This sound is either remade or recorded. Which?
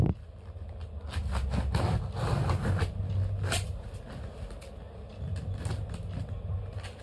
recorded